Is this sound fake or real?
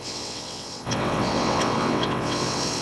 fake